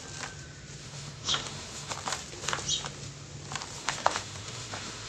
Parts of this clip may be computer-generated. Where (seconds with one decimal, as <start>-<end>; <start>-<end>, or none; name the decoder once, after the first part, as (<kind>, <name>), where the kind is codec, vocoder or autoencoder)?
0.8-1.9 (autoencoder, DAC-VAE); 3.8-5.1